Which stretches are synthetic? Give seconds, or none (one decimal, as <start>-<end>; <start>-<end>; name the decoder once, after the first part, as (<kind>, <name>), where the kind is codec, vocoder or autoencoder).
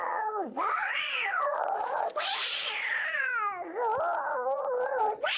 0.0-3.3 (vocoder, Vocos); 4.3-5.4